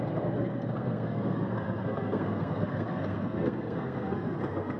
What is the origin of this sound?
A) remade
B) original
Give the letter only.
A